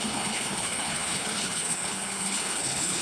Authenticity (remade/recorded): remade